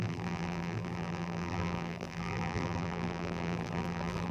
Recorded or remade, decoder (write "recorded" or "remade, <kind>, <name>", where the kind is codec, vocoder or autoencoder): remade, vocoder, BigVGAN v2